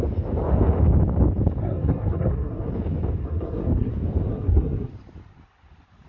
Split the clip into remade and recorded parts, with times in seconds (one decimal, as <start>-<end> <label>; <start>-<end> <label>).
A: 0.0-1.6 recorded; 1.6-2.7 remade; 2.7-3.2 recorded; 3.2-3.9 remade; 3.9-4.3 recorded; 4.3-4.9 remade; 4.9-6.1 recorded